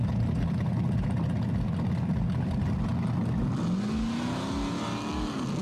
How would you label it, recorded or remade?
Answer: recorded